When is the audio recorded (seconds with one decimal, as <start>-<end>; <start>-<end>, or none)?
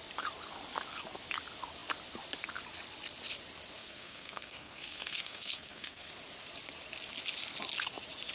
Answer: 0.0-3.8; 6.1-8.3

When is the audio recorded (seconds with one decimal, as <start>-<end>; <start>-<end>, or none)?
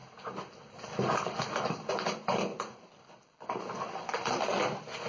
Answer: 0.0-5.1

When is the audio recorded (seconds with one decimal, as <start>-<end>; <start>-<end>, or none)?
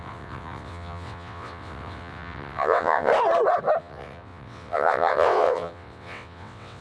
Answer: 3.1-3.8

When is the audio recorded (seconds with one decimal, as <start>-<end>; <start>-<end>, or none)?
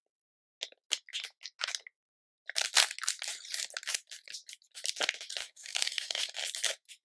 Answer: 0.0-5.4; 6.3-7.0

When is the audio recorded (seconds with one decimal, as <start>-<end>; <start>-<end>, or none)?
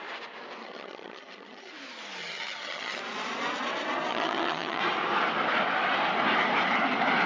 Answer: 0.0-0.6; 1.7-2.2; 3.0-4.1; 4.8-7.3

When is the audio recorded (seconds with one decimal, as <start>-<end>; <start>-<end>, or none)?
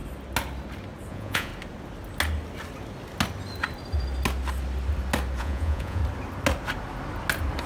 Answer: 0.0-1.1; 1.5-5.4; 6.0-7.7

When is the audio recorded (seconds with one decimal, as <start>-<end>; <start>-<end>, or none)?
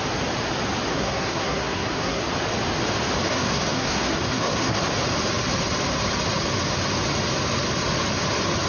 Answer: 0.0-0.9; 2.2-3.3; 4.8-8.7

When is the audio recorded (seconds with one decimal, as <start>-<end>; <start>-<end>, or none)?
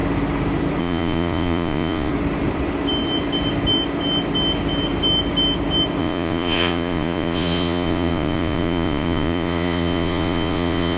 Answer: 0.0-0.8; 2.1-6.0